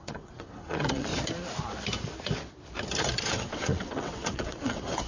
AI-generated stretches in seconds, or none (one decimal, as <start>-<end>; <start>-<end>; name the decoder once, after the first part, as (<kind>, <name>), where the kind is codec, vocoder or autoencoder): 0.0-1.1 (vocoder, WaveNeXt); 3.2-5.1